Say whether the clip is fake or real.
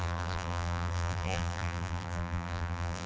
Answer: fake